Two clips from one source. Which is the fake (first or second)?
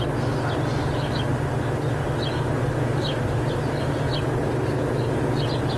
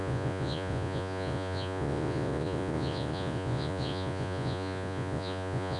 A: second